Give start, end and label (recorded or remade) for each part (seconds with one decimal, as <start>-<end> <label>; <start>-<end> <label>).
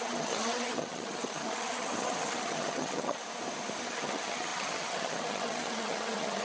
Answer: 0.0-3.2 remade; 3.2-3.8 recorded; 3.8-6.4 remade